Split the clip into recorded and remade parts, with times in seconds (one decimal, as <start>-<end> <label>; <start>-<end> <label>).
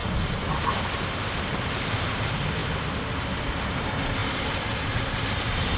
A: 0.0-5.8 recorded